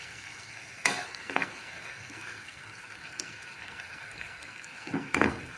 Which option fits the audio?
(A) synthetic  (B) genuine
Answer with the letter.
A